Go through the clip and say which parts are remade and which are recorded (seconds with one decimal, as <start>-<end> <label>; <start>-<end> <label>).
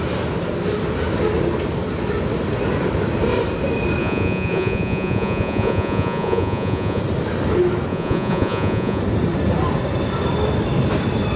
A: 0.0-4.0 recorded; 4.0-7.0 remade; 7.0-7.9 recorded; 7.9-9.0 remade; 9.0-11.4 recorded